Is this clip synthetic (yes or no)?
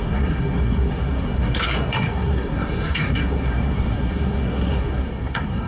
yes